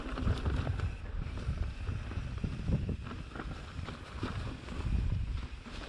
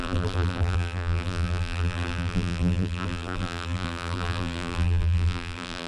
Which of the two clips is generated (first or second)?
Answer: second